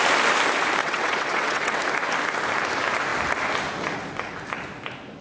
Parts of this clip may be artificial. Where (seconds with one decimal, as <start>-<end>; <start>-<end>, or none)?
0.8-1.8